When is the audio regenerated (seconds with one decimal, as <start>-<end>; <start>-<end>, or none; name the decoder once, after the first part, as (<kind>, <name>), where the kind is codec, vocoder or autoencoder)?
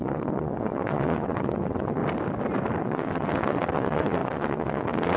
0.0-2.0 (vocoder, WaveNeXt); 2.8-5.2